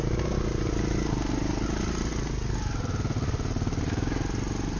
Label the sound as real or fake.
real